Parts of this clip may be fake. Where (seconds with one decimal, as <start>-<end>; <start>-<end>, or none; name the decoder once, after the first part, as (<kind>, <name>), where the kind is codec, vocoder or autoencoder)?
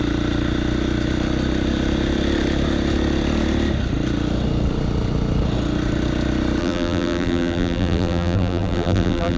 6.6-9.4 (vocoder, BigVGAN v2)